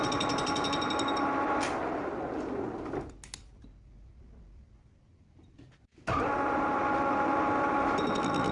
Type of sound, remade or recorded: recorded